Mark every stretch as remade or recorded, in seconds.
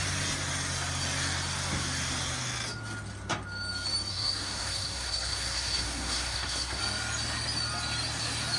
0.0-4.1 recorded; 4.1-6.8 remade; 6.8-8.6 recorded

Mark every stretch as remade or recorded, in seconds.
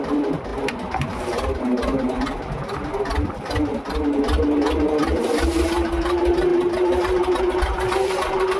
0.0-8.6 recorded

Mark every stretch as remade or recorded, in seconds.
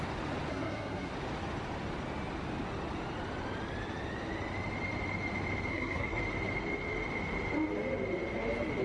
0.0-0.5 recorded; 0.5-1.1 remade; 1.1-5.7 recorded; 5.7-6.2 remade; 6.2-8.8 recorded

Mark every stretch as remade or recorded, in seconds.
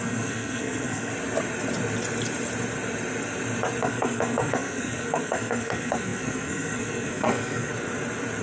0.0-1.1 remade; 1.1-3.8 recorded; 3.8-7.7 remade; 7.7-8.4 recorded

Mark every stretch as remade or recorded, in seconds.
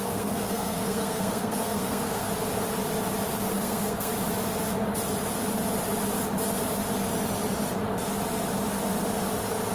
0.0-2.3 remade; 2.3-3.5 recorded; 3.5-4.1 remade; 4.1-9.7 recorded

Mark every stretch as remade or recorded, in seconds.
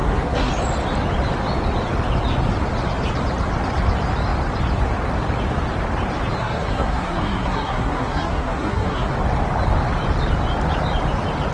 0.0-0.5 remade; 0.5-6.4 recorded; 6.4-9.1 remade; 9.1-11.5 recorded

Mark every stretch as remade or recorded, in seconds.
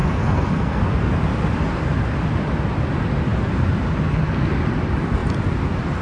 0.0-0.8 remade; 0.8-6.0 recorded